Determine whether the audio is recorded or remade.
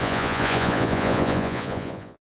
remade